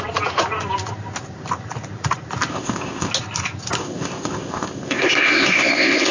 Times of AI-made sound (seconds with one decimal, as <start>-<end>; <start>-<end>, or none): 2.5-3.1; 3.8-6.1